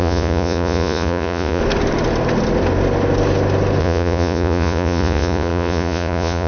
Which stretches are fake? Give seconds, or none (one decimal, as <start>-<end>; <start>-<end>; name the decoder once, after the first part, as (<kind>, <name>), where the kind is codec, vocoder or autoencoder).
0.0-1.6 (vocoder, Vocos); 3.8-6.5